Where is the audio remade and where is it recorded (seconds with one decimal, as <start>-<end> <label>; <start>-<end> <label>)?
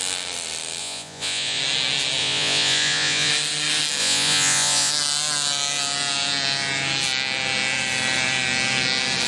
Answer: 0.0-0.8 recorded; 0.8-1.6 remade; 1.6-2.2 recorded; 2.2-3.3 remade; 3.3-4.0 recorded; 4.0-4.9 remade; 4.9-9.3 recorded